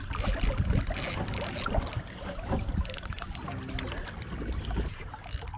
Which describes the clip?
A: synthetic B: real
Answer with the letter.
B